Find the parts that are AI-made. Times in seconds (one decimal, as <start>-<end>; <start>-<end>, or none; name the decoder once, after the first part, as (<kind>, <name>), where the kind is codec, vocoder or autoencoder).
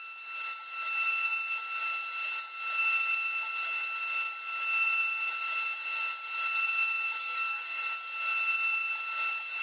7.2-7.8 (codec, SNAC)